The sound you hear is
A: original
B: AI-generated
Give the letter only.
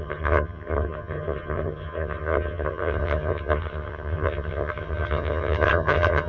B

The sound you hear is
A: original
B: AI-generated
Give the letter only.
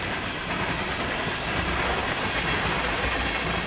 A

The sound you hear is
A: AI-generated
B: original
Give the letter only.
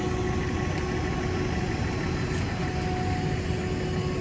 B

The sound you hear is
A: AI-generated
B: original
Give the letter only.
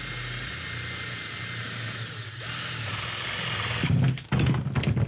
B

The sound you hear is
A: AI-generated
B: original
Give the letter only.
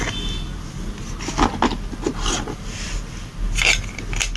B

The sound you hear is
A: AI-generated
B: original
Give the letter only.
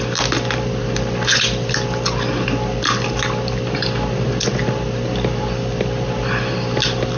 B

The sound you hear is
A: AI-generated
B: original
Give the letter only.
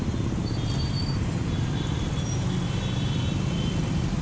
B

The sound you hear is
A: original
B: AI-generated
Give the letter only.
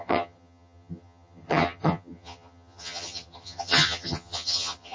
B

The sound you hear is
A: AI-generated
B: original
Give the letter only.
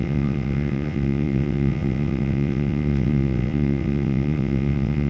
A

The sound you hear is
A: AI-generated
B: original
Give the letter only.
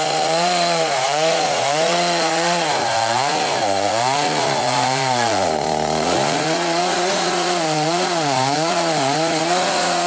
A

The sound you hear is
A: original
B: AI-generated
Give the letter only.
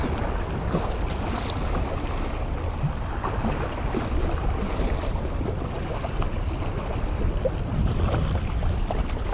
A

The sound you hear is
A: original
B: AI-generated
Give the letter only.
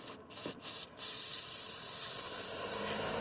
A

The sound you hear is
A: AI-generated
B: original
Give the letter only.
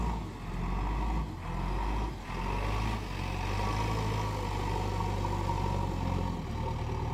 B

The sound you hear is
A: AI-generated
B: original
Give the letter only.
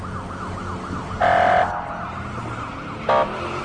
B